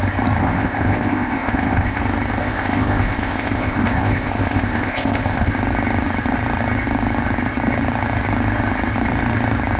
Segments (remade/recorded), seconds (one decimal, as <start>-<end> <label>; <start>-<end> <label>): 0.0-0.4 recorded; 0.4-2.0 remade; 2.0-2.4 recorded; 2.4-5.5 remade; 5.5-9.8 recorded